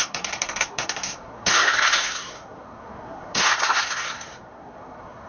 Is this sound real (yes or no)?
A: no